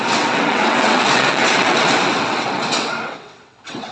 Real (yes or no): no